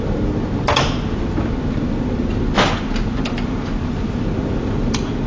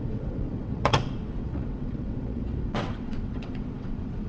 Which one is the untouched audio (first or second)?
first